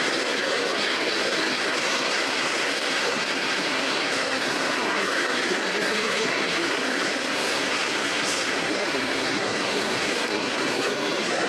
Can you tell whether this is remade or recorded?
remade